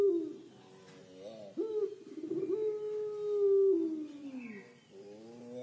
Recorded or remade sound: recorded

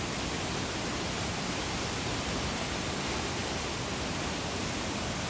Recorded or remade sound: recorded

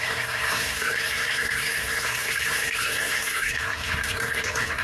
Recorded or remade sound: remade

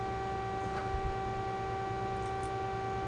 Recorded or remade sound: recorded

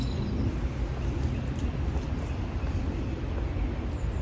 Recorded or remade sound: recorded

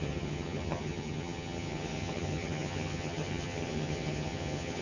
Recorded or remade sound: remade